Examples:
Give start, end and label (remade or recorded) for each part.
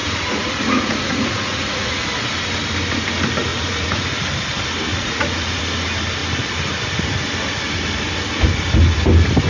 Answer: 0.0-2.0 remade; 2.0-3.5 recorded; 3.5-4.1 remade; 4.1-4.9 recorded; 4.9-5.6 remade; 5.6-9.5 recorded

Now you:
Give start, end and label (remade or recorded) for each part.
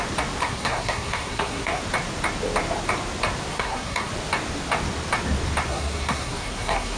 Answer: 0.0-0.4 recorded; 0.4-1.8 remade; 1.8-3.5 recorded; 3.5-4.1 remade; 4.1-5.7 recorded; 5.7-7.0 remade